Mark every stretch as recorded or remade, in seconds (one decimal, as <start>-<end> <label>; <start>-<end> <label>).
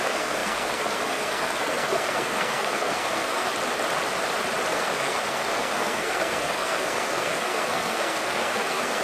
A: 0.0-3.5 remade; 3.5-4.7 recorded; 4.7-9.0 remade